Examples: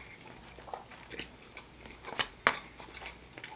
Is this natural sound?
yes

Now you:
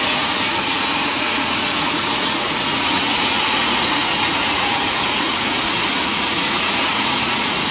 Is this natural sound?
no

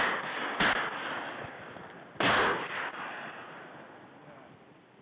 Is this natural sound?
yes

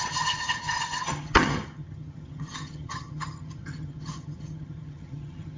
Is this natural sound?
no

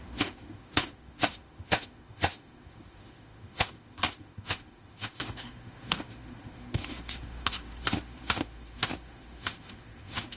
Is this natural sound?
no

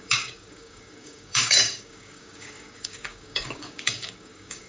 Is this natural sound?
no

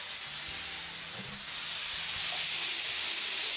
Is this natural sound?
yes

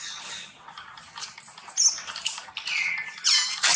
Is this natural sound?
yes